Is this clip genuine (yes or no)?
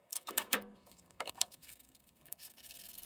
no